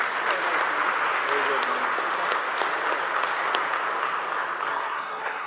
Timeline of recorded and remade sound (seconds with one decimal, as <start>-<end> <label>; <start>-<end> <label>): 0.0-4.7 recorded; 4.7-5.5 remade